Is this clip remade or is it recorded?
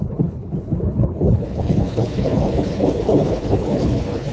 remade